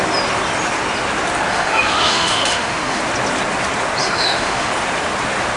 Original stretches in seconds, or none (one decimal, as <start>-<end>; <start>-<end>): 0.0-1.5; 3.0-4.0; 4.7-5.6